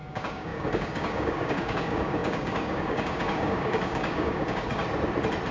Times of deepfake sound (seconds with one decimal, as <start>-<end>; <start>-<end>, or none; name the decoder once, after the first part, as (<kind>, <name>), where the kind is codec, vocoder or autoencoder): 0.0-4.8 (codec, DAC)